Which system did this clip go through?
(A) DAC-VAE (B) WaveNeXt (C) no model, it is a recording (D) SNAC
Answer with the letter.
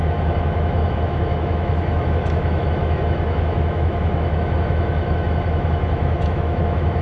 A